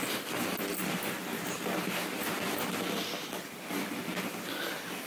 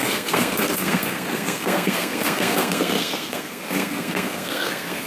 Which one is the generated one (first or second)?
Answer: second